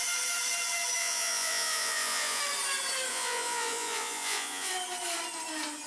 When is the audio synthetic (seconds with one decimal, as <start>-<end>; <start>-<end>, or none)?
1.0-2.4; 3.1-4.7

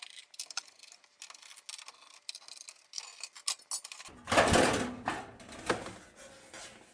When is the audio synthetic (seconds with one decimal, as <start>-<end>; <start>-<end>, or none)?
none

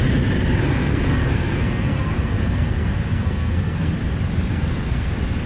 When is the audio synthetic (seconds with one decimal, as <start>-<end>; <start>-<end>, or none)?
0.8-3.9; 4.5-5.1

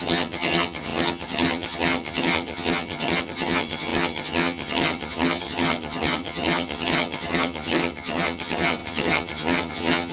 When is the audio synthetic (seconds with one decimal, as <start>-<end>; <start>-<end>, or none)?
0.0-10.1

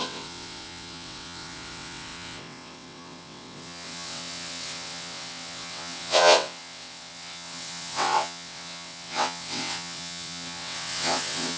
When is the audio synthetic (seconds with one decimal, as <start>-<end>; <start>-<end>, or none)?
0.0-11.6

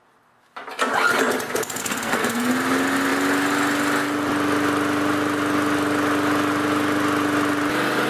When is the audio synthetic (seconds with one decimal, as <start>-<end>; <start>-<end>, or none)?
1.8-2.5

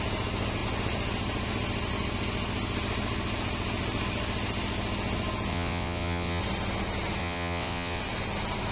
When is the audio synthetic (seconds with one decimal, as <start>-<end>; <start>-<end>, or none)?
5.5-6.4; 7.2-8.0